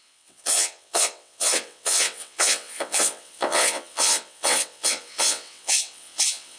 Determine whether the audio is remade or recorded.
remade